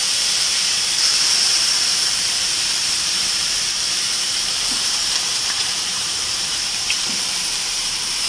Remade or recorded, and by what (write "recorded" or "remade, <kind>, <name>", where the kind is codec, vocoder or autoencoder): remade, vocoder, BigVGAN v2